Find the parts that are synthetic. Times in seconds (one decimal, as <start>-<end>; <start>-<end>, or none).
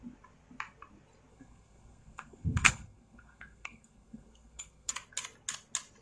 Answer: 1.3-4.9